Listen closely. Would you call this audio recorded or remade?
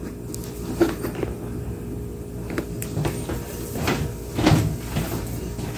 recorded